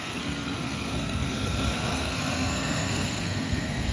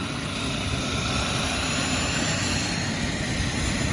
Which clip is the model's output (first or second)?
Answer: first